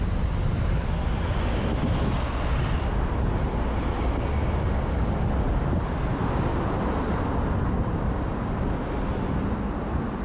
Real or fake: real